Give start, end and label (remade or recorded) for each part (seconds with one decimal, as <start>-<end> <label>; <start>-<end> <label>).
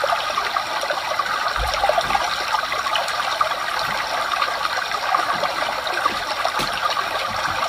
0.0-2.9 recorded; 2.9-7.2 remade; 7.2-7.7 recorded